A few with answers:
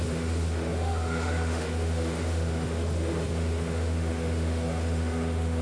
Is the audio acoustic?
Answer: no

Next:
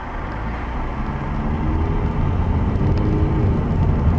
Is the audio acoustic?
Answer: yes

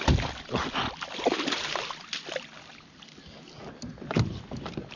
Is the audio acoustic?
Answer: yes